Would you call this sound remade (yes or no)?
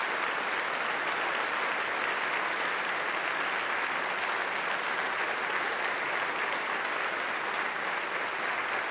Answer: no